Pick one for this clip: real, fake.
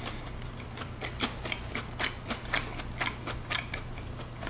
real